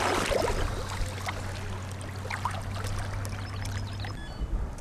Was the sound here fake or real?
real